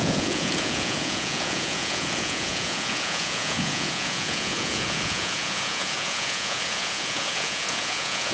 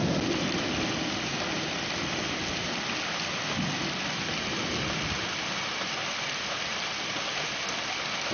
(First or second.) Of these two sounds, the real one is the second